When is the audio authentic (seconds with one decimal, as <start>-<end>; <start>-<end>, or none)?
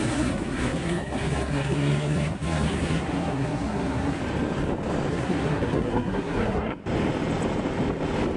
4.2-5.1; 6.8-8.4